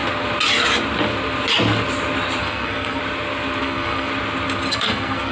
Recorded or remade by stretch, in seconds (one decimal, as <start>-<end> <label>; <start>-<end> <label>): 0.0-2.4 recorded; 2.4-3.0 remade; 3.0-3.6 recorded; 3.6-4.1 remade; 4.1-4.7 recorded; 4.7-5.3 remade